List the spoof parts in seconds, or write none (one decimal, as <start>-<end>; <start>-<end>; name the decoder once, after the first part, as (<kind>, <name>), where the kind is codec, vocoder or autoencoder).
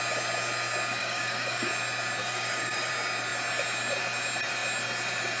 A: 1.0-1.7 (codec, DAC); 2.2-2.9